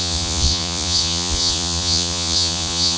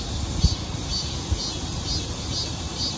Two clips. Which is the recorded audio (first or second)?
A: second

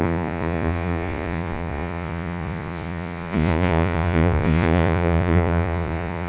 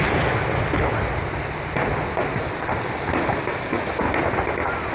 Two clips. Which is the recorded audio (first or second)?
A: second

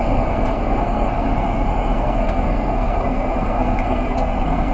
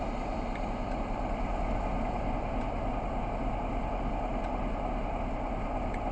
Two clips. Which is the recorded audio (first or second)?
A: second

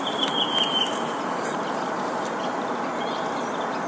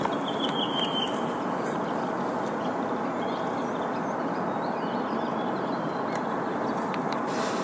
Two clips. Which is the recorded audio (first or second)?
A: second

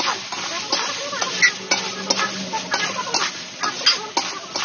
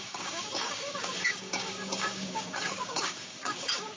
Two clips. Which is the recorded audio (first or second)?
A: first